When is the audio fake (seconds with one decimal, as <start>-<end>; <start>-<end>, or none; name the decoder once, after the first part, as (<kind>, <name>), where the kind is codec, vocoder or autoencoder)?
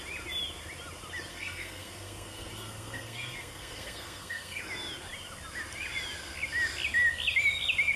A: 1.3-4.6 (codec, SNAC)